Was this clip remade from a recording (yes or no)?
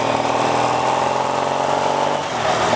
no